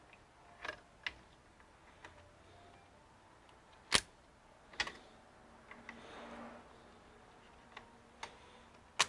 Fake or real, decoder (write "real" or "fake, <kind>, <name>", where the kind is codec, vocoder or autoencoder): real